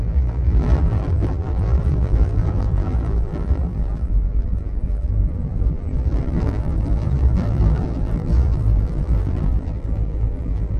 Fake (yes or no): yes